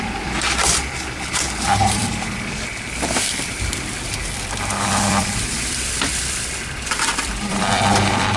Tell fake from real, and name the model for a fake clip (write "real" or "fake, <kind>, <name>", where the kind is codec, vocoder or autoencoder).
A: fake, vocoder, BigVGAN v2